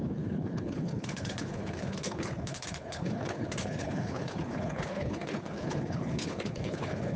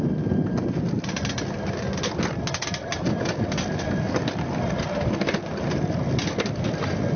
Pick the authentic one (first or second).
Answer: second